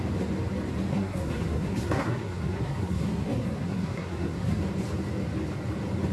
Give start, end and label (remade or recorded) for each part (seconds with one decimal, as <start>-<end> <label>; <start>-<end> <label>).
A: 0.0-0.9 recorded; 0.9-4.6 remade; 4.6-6.1 recorded